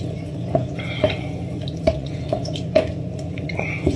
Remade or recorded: remade